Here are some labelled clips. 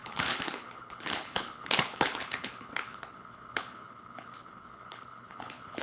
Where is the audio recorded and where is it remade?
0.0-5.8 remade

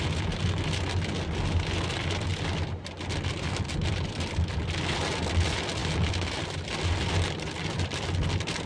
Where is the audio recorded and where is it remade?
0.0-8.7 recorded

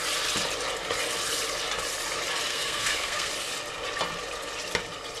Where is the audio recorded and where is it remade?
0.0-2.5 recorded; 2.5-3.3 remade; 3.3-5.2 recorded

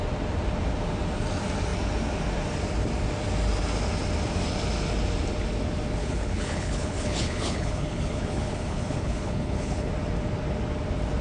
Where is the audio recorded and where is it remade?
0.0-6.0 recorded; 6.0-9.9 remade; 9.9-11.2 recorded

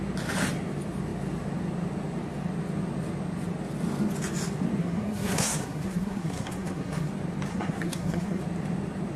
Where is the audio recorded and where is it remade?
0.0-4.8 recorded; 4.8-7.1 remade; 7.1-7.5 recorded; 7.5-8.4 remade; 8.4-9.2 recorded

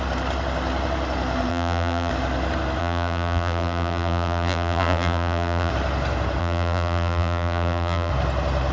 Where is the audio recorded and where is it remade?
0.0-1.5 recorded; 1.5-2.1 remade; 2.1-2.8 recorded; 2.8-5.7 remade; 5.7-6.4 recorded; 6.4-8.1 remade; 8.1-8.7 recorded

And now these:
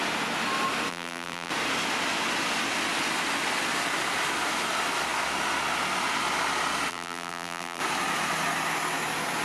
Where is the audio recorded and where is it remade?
0.0-0.9 recorded; 0.9-1.5 remade; 1.5-6.9 recorded; 6.9-7.8 remade; 7.8-9.4 recorded